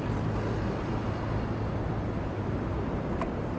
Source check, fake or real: real